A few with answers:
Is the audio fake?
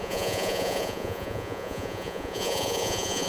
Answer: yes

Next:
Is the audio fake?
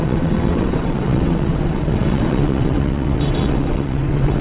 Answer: yes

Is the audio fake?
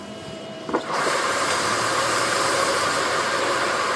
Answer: yes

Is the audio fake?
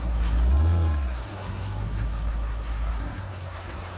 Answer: yes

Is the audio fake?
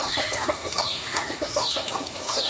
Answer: yes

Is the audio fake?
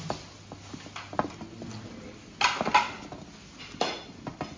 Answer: no